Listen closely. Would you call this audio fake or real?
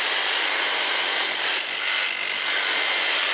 fake